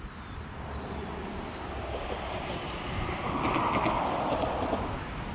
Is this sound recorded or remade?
recorded